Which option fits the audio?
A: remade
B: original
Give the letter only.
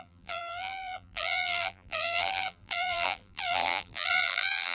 A